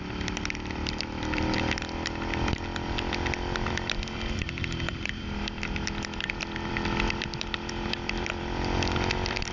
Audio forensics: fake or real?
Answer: fake